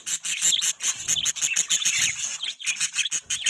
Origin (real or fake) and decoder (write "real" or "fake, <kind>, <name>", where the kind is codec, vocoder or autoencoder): real